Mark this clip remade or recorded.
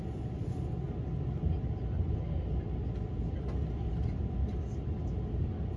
recorded